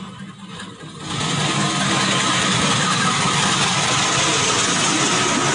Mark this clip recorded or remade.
recorded